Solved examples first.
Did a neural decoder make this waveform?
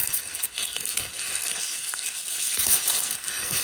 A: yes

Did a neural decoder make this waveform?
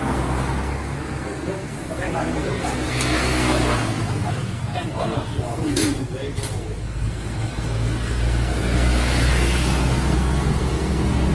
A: yes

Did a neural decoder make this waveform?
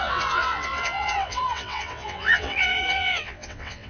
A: yes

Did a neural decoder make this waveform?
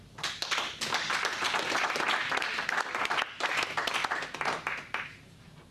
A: no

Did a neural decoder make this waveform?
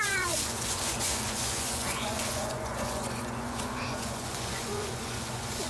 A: yes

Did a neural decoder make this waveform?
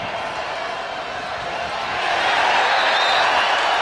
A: no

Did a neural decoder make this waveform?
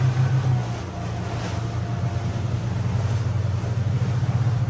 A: no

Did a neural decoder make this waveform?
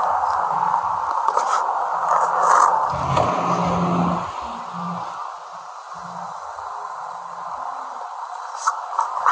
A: no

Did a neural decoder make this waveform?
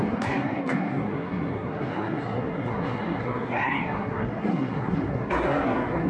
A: yes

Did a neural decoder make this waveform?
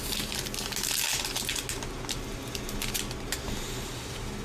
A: no